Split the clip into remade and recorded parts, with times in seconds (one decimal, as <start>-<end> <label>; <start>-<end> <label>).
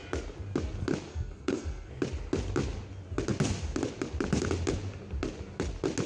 0.0-1.1 recorded; 1.1-1.9 remade; 1.9-6.1 recorded